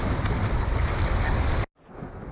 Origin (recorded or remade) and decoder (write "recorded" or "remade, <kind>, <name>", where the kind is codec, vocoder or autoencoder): recorded